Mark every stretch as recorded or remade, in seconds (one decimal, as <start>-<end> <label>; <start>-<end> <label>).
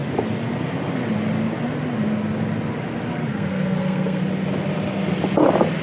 0.0-3.3 recorded; 3.3-4.2 remade; 4.2-5.8 recorded